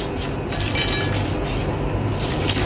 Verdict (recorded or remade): recorded